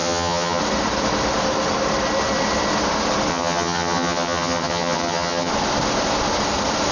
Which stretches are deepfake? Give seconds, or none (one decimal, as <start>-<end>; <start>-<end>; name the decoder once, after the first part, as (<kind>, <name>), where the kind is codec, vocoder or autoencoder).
0.0-0.6 (vocoder, HiFi-GAN); 3.3-5.5